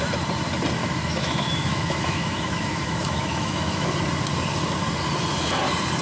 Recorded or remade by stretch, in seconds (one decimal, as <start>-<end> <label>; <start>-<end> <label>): 0.0-0.8 recorded; 0.8-3.9 remade; 3.9-6.0 recorded